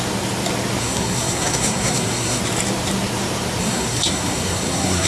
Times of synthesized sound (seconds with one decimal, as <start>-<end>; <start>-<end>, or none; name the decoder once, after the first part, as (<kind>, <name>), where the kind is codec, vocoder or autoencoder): 0.8-2.4 (codec, SNAC); 3.6-5.1